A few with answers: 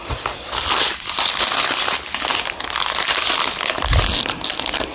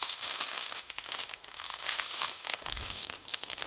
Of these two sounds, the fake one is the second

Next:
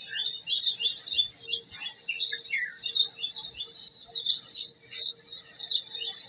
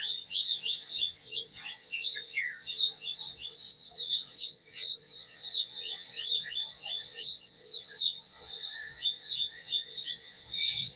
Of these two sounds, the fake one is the second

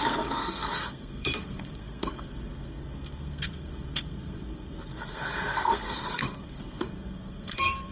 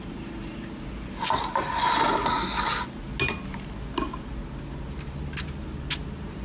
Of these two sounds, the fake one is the first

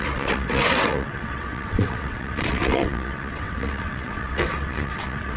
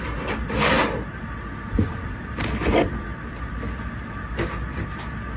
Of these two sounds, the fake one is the first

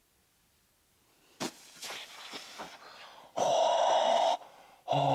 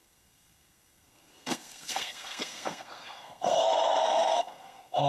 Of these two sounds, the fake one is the second